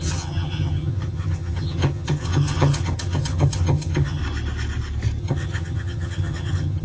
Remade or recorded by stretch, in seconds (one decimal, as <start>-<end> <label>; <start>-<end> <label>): 0.0-4.2 remade; 4.2-5.2 recorded; 5.2-6.8 remade